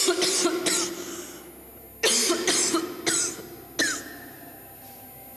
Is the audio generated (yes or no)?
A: no